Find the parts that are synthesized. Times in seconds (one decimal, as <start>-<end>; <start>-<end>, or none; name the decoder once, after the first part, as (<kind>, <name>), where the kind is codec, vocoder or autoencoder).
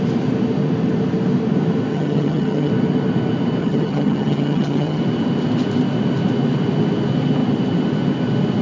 1.9-2.7 (vocoder, HiFi-GAN); 3.6-5.0